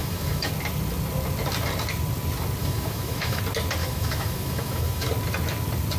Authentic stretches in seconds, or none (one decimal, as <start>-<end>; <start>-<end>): 0.5-2.6; 3.4-3.8; 5.1-6.0